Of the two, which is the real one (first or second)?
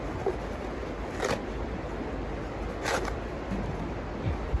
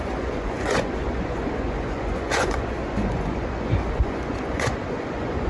first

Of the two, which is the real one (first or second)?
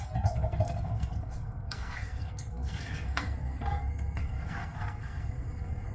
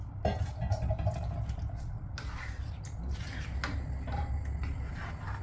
second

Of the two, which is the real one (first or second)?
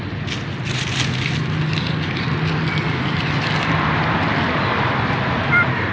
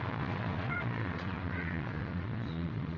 first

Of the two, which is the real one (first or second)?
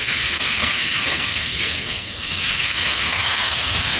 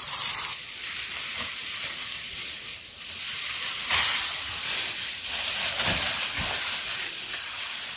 second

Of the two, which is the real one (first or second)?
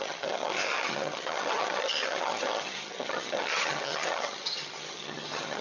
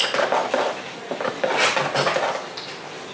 second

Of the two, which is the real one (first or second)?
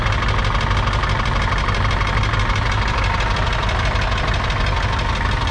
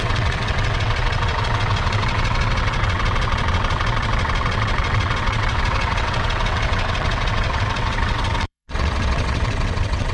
first